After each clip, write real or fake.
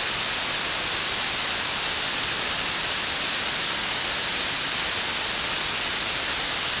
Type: real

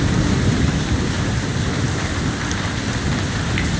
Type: real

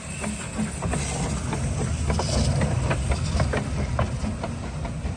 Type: real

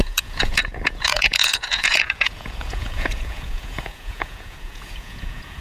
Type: fake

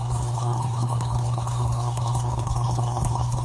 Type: fake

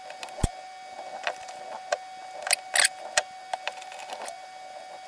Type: real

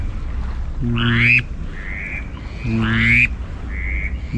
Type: real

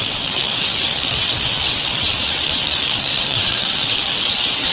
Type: fake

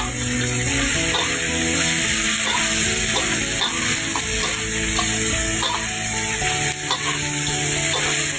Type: real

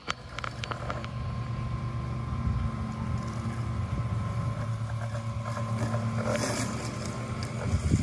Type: real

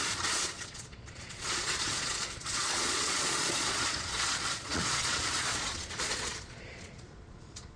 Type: fake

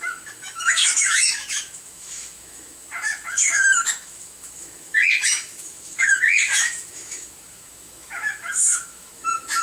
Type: fake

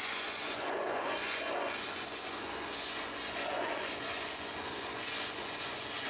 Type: fake